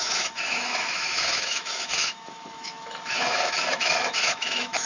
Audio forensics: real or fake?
fake